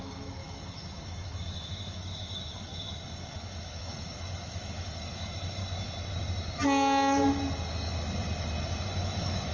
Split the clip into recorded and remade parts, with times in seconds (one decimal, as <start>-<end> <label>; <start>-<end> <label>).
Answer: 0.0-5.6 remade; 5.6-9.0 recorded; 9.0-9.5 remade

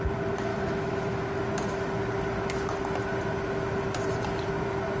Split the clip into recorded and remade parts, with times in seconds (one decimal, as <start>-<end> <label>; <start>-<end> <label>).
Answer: 0.0-0.5 recorded; 0.5-1.2 remade; 1.2-5.0 recorded

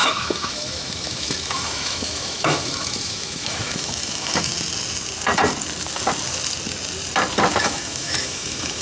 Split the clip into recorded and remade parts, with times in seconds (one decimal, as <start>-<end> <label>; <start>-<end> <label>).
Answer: 0.0-4.5 remade; 4.5-7.6 recorded; 7.6-8.8 remade

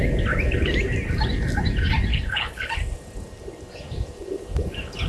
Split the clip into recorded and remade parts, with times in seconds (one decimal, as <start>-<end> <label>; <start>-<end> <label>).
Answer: 0.0-2.1 recorded; 2.1-2.7 remade; 2.7-5.1 recorded

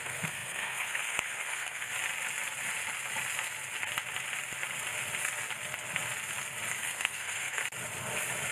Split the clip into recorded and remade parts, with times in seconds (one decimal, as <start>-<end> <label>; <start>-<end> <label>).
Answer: 0.0-1.9 remade; 1.9-6.8 recorded; 6.8-7.6 remade; 7.6-8.5 recorded

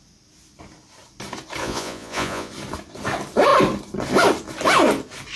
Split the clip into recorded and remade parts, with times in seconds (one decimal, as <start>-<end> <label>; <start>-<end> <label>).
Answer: 0.0-1.6 recorded; 1.6-2.5 remade; 2.5-5.4 recorded